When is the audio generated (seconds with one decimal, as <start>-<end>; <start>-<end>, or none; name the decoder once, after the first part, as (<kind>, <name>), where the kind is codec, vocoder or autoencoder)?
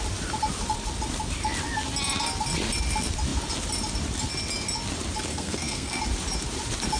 5.3-6.0 (codec, SNAC)